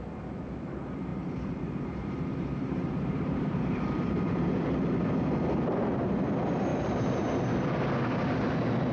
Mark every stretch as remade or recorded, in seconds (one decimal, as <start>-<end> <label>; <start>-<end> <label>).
0.0-1.1 recorded; 1.1-4.1 remade; 4.1-6.7 recorded; 6.7-7.3 remade; 7.3-8.9 recorded